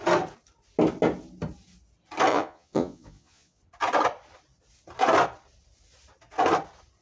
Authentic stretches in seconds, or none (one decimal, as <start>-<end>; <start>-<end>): 0.0-2.3; 3.6-7.0